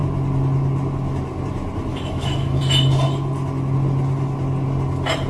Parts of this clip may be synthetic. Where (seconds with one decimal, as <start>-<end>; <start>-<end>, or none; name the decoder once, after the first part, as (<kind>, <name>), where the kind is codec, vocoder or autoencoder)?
1.9-2.6 (autoencoder, DAC-VAE)